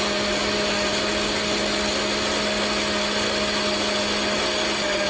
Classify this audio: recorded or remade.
recorded